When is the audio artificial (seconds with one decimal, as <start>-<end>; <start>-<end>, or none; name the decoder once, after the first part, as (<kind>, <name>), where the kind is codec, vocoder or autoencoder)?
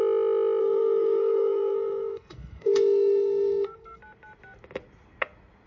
0.6-4.0 (codec, SNAC)